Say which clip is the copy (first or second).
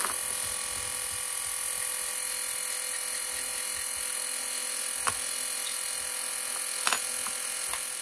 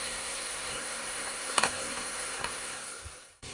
second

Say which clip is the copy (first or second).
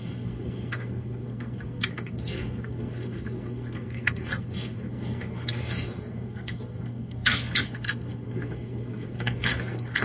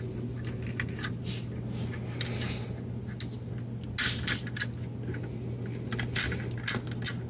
first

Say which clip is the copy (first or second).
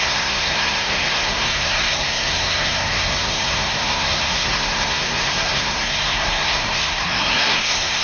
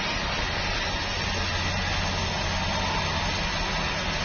first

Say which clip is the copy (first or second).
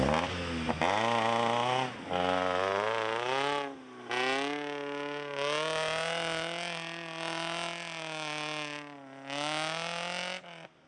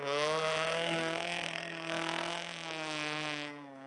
second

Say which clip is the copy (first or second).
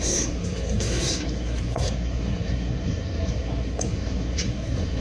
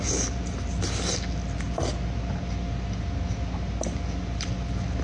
first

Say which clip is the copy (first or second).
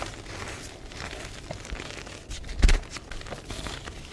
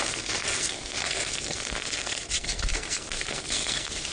second